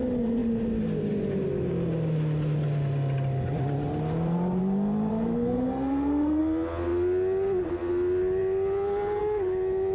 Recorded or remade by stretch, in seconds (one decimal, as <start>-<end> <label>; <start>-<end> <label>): 0.0-5.1 recorded; 5.1-6.4 remade; 6.4-9.9 recorded